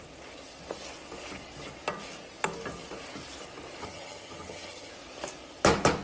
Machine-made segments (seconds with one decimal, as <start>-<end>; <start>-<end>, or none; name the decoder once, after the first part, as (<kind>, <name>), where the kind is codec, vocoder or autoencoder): 3.8-4.9 (vocoder, HiFi-GAN)